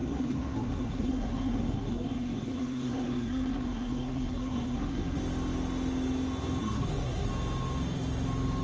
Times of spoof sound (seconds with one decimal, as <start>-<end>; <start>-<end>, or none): 0.0-5.2; 6.6-7.3